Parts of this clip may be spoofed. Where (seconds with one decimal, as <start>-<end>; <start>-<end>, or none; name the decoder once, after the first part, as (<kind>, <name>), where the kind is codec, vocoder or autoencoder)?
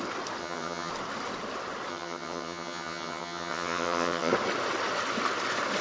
0.4-0.9 (vocoder, HiFi-GAN); 1.9-4.3